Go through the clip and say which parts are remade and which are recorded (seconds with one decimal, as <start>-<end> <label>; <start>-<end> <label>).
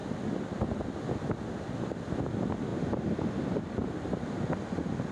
0.0-5.1 recorded